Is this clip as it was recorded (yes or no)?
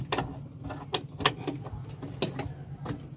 yes